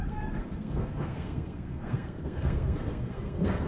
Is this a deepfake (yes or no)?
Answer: yes